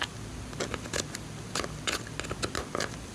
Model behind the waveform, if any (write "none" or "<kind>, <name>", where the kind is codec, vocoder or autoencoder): none